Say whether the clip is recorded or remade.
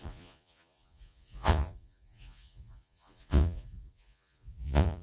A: remade